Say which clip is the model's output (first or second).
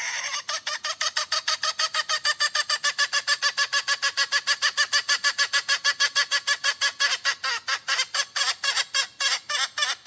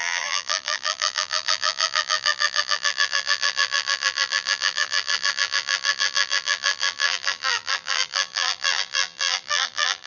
second